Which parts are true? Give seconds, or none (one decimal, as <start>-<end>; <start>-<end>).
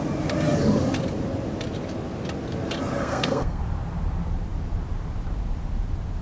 0.0-3.0; 3.6-6.2